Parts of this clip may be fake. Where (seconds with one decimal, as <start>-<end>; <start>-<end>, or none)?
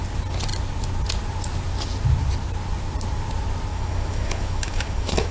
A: 3.7-5.3